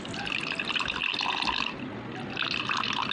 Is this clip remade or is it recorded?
recorded